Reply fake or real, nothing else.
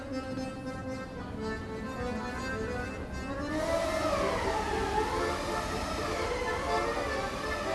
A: real